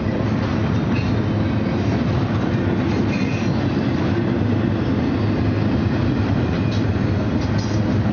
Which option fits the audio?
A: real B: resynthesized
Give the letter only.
A